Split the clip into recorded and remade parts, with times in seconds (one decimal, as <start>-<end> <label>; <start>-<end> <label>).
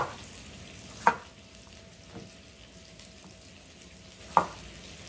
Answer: 0.0-5.1 recorded